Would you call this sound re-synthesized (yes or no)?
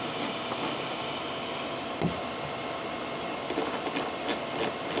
no